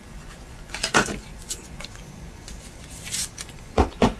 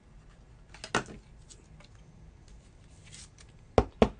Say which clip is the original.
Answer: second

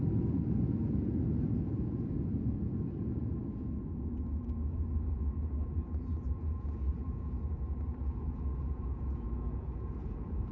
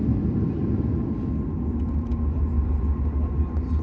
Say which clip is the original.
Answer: second